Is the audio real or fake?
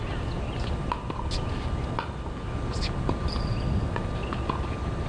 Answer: real